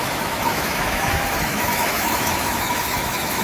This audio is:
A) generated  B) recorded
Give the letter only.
A